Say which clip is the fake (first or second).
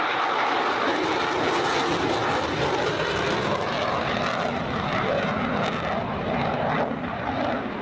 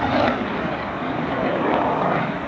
second